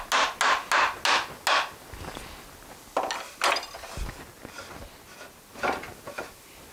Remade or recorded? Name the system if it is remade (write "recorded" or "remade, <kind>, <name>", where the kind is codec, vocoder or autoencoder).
recorded